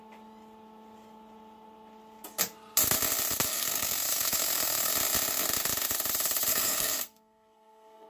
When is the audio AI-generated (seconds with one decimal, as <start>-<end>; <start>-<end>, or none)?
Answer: 3.5-4.9; 6.5-8.1